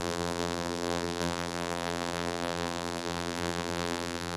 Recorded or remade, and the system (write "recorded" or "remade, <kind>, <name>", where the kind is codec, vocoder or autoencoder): remade, vocoder, BigVGAN v2